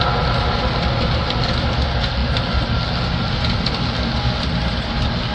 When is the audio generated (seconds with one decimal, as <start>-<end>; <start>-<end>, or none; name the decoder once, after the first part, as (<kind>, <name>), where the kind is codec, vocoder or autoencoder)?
none